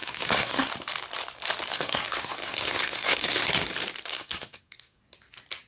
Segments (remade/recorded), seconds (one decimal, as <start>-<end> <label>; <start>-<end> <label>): 0.0-0.7 remade; 0.7-1.7 recorded; 1.7-3.5 remade; 3.5-4.1 recorded; 4.1-5.0 remade; 5.0-5.7 recorded